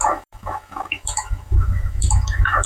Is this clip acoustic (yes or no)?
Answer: no